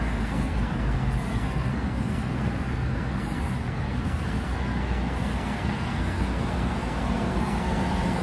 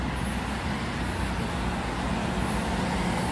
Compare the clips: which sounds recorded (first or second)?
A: second